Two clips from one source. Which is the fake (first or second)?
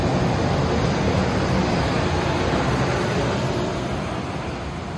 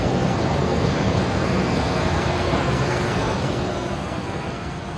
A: second